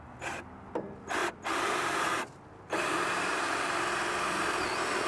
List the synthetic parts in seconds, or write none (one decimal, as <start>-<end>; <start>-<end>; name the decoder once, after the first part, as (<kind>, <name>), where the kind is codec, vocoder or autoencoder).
1.2-3.4 (vocoder, BigVGAN v2)

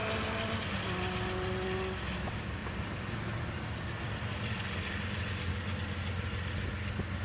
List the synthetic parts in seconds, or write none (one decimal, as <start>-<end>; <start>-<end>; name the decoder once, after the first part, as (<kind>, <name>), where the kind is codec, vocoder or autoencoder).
0.0-0.6 (vocoder, BigVGAN v2); 2.6-5.7

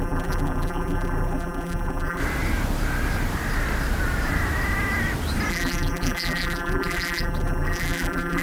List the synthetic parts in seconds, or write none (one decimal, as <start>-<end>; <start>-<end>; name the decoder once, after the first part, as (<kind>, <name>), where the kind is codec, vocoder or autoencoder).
0.0-2.2 (vocoder, BigVGAN v2); 5.5-8.4

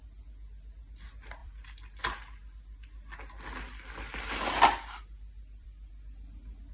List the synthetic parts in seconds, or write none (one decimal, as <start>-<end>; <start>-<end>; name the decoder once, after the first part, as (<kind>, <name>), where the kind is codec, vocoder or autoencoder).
1.4-2.0 (vocoder, BigVGAN v2); 3.7-5.9

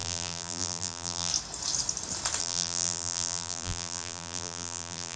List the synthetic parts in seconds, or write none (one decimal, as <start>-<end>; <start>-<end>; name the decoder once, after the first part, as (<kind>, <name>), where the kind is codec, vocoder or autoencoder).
0.0-1.3 (vocoder, BigVGAN v2); 2.4-5.2

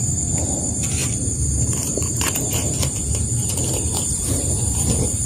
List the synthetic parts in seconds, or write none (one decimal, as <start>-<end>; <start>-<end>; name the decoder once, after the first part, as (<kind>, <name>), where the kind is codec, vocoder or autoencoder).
0.0-5.3 (vocoder, BigVGAN v2)

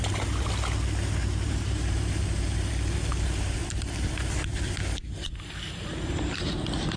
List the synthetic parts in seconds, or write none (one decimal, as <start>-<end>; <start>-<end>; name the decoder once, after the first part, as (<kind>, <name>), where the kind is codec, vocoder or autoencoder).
1.2-2.7 (vocoder, BigVGAN v2); 5.9-6.5

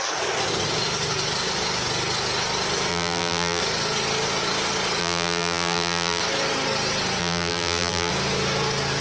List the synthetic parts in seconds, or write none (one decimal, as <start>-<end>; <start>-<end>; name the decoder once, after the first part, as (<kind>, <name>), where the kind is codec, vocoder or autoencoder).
2.9-3.6 (vocoder, BigVGAN v2); 5.0-6.2; 7.2-8.1